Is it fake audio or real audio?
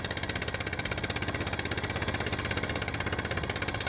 real